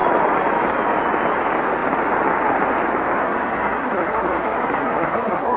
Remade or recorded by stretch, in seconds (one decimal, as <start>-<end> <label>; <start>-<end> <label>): 0.0-3.2 recorded; 3.2-5.6 remade